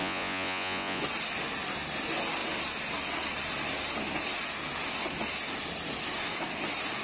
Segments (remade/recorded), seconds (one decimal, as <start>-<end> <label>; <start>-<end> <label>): 0.0-1.0 remade; 1.0-7.0 recorded